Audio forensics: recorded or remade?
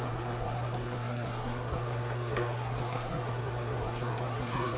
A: remade